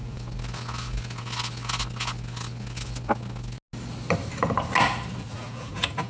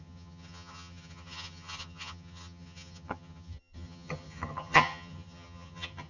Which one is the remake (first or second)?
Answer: second